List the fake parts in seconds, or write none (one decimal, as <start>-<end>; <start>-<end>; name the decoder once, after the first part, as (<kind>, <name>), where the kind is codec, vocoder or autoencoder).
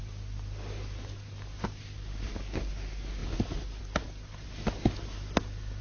none